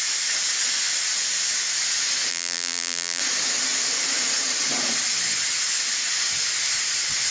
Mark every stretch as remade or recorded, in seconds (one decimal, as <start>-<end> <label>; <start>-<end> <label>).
0.0-2.3 recorded; 2.3-3.2 remade; 3.2-7.3 recorded